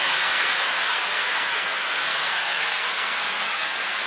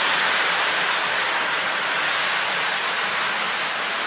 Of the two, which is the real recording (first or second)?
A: second